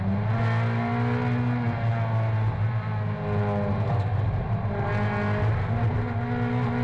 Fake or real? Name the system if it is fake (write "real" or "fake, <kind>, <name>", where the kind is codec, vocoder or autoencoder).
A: real